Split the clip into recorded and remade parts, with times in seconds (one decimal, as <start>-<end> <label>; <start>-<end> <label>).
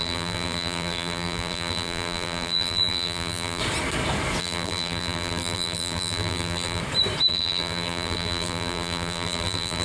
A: 0.0-3.6 remade; 3.6-4.4 recorded; 4.4-6.8 remade; 6.8-7.3 recorded; 7.3-9.8 remade